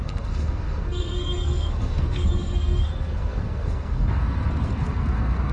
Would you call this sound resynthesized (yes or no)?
yes